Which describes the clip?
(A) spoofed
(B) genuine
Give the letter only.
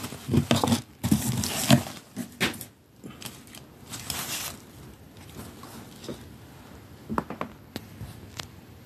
B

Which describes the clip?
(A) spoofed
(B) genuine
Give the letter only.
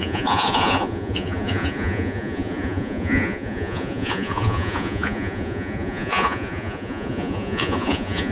A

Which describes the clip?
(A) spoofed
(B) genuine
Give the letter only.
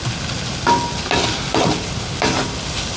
B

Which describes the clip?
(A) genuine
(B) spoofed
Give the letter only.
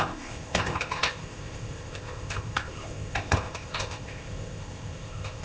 B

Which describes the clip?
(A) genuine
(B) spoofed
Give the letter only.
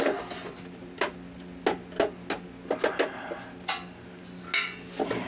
A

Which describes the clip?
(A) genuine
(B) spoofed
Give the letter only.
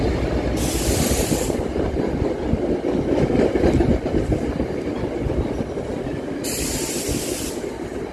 A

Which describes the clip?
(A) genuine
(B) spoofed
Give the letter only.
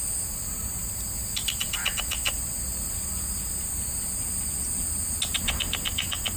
A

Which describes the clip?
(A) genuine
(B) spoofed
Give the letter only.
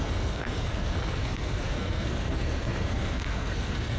B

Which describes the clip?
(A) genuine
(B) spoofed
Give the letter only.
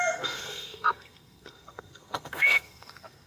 B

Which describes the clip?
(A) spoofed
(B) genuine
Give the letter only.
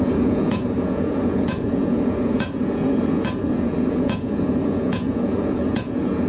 A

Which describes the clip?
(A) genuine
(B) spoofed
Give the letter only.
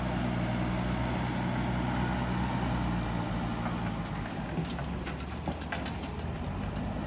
A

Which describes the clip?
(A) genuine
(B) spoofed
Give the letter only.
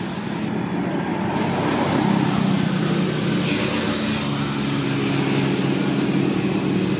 A